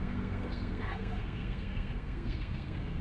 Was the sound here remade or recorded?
remade